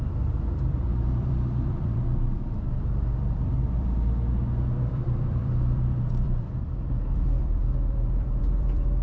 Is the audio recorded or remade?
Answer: remade